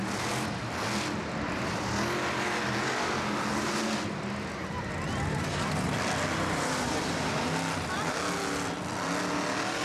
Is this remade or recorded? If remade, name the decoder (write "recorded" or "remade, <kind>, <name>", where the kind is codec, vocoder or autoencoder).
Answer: recorded